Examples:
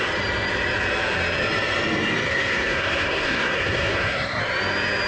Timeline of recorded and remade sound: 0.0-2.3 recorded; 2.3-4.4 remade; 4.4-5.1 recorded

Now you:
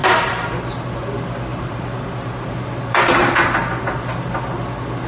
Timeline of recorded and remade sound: 0.0-0.5 remade; 0.5-1.5 recorded; 1.5-3.3 remade; 3.3-5.1 recorded

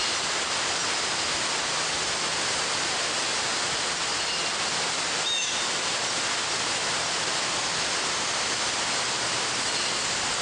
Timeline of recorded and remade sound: 0.0-10.4 recorded

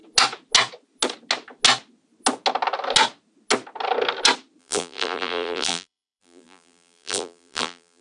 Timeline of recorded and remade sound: 0.0-4.6 recorded; 4.6-8.0 remade